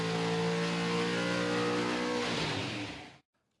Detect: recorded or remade recorded